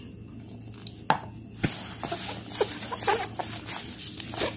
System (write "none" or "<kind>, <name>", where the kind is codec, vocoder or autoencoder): none